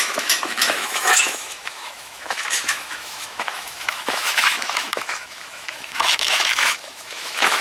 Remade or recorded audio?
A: remade